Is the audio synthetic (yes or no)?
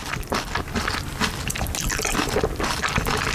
yes